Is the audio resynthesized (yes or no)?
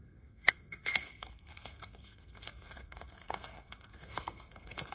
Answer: yes